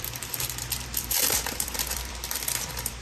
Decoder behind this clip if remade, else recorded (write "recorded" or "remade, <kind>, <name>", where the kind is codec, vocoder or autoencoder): remade, vocoder, BigVGAN v2